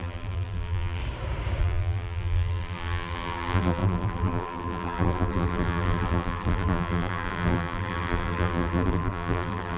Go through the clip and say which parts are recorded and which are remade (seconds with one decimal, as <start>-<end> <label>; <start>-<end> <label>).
0.0-1.0 remade; 1.0-1.6 recorded; 1.6-9.8 remade